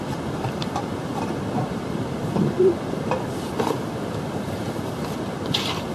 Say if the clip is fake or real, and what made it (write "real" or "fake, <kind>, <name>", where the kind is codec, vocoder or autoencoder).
fake, vocoder, BigVGAN v2